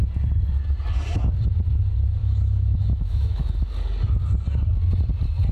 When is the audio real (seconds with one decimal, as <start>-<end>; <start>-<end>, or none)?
0.0-2.2; 3.7-5.5